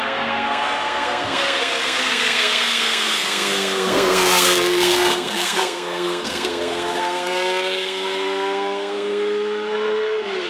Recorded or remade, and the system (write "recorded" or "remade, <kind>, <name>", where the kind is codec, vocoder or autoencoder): remade, codec, SNAC